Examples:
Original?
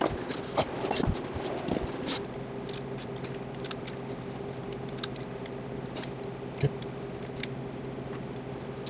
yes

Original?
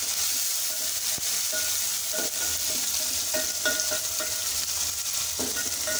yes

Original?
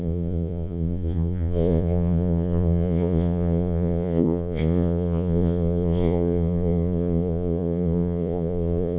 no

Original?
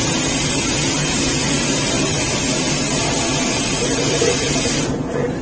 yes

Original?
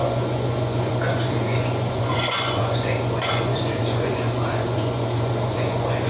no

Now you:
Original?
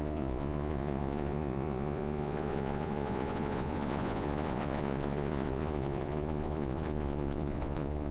no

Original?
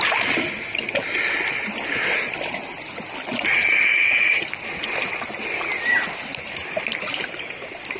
yes